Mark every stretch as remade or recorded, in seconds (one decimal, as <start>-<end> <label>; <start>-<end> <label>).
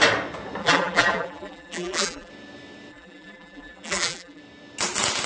0.0-0.6 recorded; 0.6-2.3 remade; 2.3-2.9 recorded; 2.9-4.4 remade; 4.4-5.3 recorded